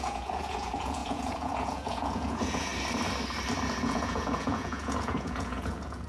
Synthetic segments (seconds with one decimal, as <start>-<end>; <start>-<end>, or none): 0.0-2.7; 3.8-6.1